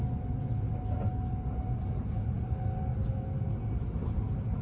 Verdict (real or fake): real